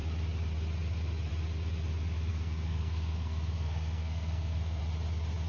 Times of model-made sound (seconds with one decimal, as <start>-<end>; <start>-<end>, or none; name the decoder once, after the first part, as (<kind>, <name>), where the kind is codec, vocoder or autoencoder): 2.3-4.8 (codec, SNAC)

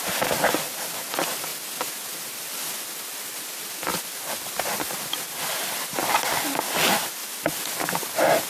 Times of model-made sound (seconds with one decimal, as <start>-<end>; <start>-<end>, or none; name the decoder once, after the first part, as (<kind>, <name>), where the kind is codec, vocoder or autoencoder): none

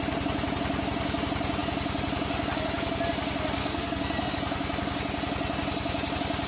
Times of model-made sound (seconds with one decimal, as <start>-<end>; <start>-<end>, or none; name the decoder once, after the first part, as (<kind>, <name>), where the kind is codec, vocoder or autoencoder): 3.6-4.3 (codec, SNAC)

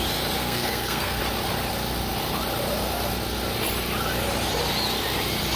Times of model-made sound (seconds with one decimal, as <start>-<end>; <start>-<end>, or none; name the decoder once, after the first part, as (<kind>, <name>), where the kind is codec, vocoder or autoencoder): 0.4-1.2 (codec, SNAC)

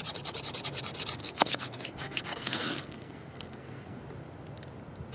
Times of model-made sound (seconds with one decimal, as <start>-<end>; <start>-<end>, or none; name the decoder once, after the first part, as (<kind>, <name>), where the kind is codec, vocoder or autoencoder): 1.2-4.0 (codec, SNAC)

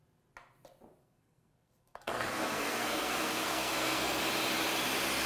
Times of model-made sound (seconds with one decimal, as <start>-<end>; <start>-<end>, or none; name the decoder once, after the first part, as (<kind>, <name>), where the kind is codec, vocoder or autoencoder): 1.0-4.2 (codec, SNAC)

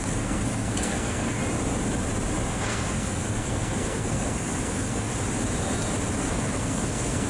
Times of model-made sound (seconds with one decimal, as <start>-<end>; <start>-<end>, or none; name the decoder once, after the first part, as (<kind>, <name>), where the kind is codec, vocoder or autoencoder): 0.0-1.4 (codec, SNAC); 2.5-5.1; 6.2-7.3

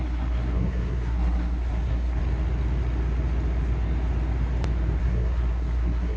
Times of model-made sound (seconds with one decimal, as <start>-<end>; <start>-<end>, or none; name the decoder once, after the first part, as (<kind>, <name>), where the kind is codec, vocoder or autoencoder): 0.0-2.2 (codec, SNAC); 5.0-6.2